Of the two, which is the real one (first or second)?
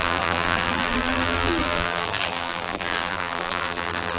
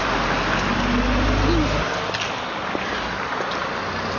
second